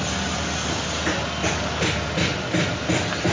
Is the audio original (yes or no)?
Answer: yes